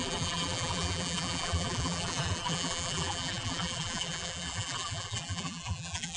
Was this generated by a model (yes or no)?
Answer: yes